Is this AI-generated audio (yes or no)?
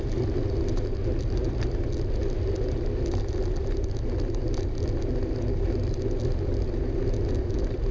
no